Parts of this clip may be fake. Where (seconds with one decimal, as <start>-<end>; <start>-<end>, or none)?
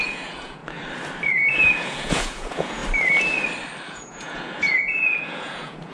0.0-0.6; 1.5-2.8; 3.9-5.9